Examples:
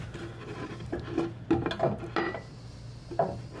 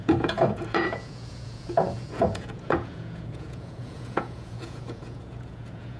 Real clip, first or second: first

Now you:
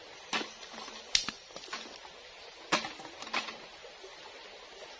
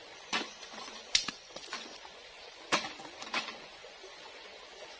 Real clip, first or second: first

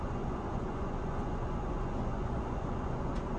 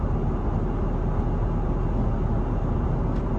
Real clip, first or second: second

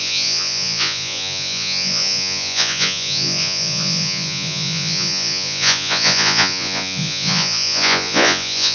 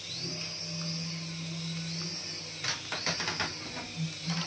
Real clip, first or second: second